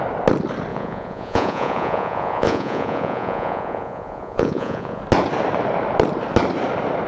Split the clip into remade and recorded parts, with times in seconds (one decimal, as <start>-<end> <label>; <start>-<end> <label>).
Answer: 0.0-0.7 recorded; 0.7-5.0 remade; 5.0-7.1 recorded